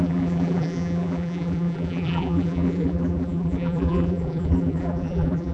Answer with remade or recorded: remade